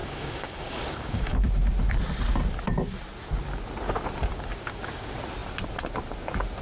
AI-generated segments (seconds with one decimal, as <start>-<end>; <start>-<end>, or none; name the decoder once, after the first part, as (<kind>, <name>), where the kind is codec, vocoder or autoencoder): 0.0-1.5 (codec, DAC); 4.3-5.0